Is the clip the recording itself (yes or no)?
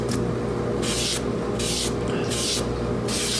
yes